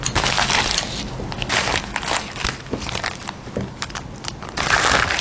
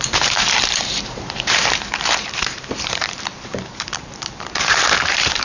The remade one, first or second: second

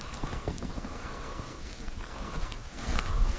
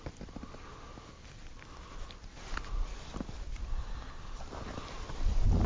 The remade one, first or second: first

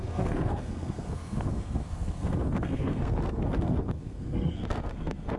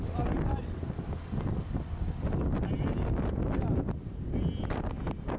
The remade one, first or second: first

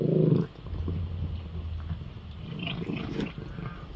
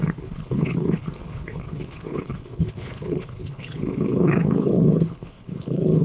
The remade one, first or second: second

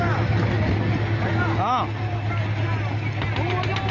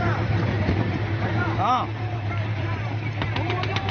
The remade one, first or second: second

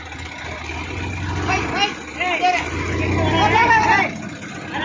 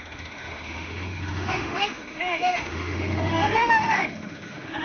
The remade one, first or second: second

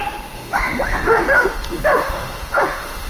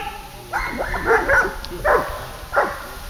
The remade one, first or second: first